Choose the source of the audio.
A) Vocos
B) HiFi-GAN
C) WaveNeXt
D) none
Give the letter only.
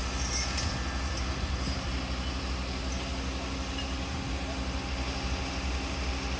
D